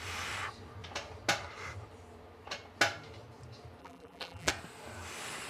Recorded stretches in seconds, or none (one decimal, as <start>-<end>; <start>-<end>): 0.0-3.8; 4.5-5.5